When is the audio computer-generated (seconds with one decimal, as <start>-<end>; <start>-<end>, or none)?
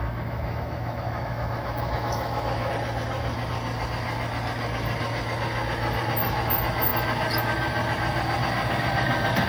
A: 0.0-2.7